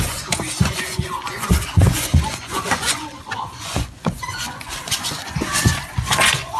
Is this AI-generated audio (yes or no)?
yes